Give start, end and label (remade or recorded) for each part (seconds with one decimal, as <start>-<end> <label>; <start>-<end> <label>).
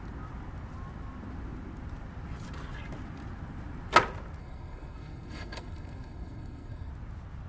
0.0-4.4 recorded; 4.4-6.9 remade; 6.9-7.5 recorded